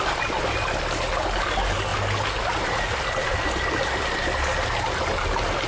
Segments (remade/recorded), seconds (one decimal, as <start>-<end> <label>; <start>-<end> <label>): 0.0-5.7 recorded